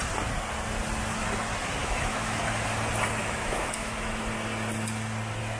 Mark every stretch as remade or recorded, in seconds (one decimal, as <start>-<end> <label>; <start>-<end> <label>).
0.0-1.8 recorded; 1.8-2.4 remade; 2.4-3.2 recorded; 3.2-4.2 remade; 4.2-5.6 recorded

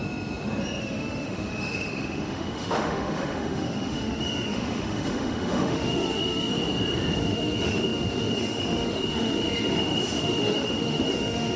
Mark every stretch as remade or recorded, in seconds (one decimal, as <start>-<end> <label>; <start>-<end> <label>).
0.0-0.8 recorded; 0.8-6.5 remade; 6.5-7.2 recorded; 7.2-11.6 remade

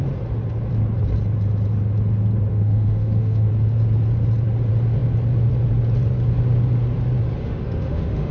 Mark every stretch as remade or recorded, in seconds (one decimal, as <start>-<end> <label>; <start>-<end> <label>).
0.0-2.5 recorded; 2.5-3.5 remade; 3.5-7.4 recorded; 7.4-8.3 remade